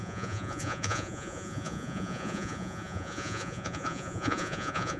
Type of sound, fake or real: fake